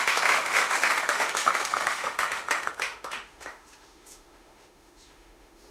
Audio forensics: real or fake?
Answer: fake